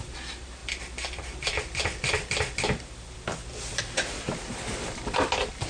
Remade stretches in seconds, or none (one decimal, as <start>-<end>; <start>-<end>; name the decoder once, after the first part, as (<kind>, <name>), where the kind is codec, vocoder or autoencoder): none